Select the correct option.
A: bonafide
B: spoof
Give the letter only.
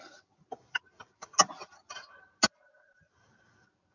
A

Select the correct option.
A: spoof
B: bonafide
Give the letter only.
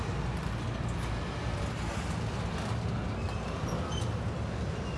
B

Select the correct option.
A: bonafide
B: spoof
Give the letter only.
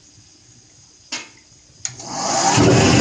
A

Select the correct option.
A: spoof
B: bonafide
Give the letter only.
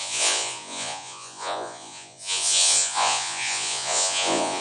A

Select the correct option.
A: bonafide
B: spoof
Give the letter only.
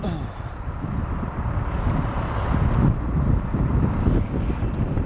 A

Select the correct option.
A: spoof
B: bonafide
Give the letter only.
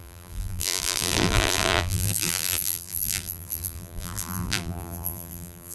A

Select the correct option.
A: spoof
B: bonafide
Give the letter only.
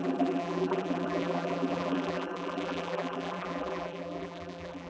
A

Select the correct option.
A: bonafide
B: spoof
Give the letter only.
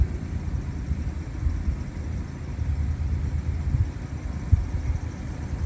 A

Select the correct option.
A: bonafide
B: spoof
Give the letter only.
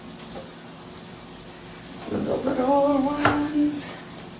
A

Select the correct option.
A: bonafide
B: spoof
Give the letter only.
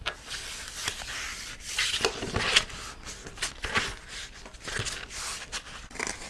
A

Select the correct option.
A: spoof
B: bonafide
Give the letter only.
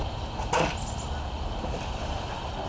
B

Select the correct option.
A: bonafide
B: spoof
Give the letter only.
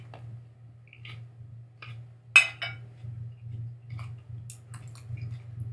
A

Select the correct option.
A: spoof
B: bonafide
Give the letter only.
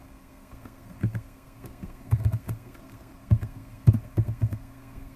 A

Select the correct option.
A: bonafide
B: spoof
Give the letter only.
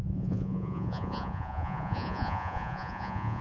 B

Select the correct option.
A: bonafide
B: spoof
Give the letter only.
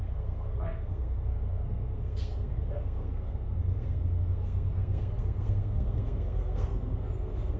B